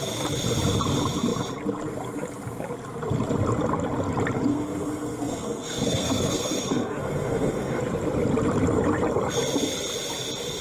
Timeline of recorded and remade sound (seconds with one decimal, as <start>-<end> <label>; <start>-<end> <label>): 0.0-4.5 recorded; 4.5-7.8 remade; 7.8-10.6 recorded